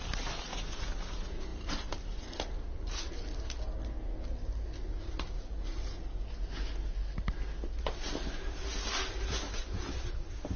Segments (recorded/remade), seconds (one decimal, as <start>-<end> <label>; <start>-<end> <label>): 0.0-10.6 recorded